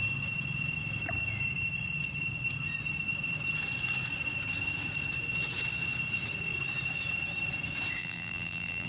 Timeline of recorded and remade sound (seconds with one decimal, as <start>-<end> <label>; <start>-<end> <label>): 0.0-8.0 recorded; 8.0-8.9 remade